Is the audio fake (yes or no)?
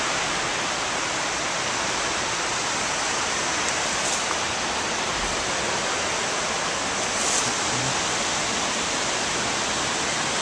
no